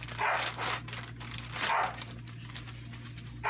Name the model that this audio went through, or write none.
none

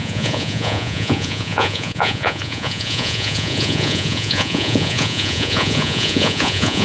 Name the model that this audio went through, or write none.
vocoder, Vocos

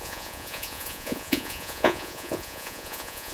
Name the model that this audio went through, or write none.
vocoder, Vocos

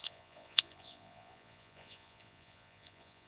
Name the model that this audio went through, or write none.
vocoder, Vocos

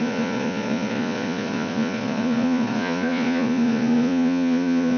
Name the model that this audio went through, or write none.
vocoder, Vocos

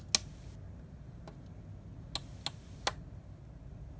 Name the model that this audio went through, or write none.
none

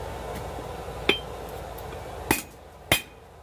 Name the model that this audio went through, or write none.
none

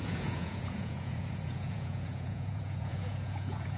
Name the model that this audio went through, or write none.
vocoder, Vocos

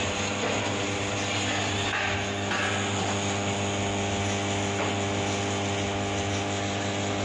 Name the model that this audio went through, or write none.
none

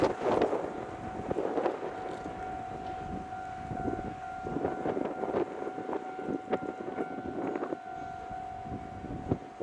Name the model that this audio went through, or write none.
none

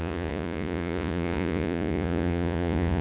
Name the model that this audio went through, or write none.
vocoder, Vocos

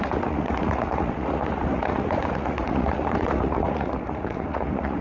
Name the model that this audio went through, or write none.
vocoder, Vocos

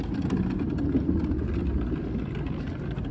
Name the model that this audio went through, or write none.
none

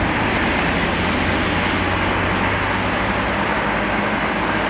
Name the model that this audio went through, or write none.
none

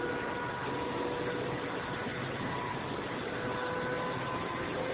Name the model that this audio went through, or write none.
none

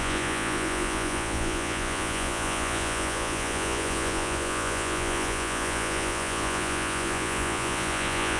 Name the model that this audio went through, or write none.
vocoder, Vocos